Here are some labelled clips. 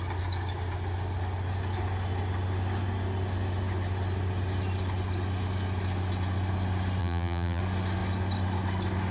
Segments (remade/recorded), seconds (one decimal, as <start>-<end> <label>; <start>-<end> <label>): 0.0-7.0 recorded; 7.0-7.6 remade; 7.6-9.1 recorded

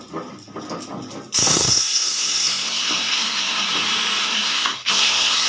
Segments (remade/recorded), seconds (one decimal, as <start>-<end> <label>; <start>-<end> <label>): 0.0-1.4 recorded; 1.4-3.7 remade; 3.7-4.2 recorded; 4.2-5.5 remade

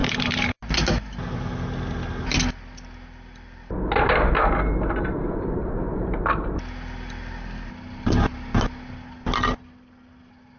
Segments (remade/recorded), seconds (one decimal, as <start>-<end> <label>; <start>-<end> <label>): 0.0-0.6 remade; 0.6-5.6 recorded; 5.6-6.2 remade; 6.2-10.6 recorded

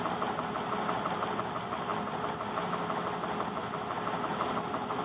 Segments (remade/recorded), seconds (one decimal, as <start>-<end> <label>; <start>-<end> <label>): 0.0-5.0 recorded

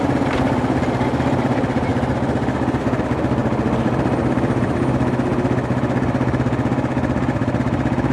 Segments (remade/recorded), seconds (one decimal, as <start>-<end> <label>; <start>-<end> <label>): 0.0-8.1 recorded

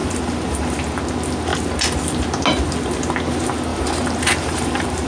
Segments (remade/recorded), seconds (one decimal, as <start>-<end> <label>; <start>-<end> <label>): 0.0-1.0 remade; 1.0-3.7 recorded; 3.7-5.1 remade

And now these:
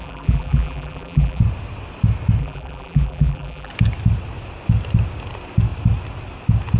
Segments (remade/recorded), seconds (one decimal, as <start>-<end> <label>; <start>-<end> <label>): 0.0-1.4 remade; 1.4-2.4 recorded; 2.4-3.7 remade; 3.7-6.8 recorded